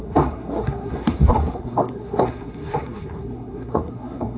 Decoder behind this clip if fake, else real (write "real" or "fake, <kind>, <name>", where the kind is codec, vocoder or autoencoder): fake, codec, SNAC